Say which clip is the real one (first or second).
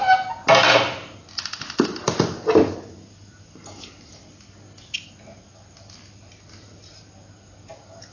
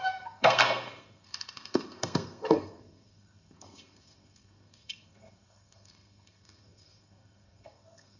first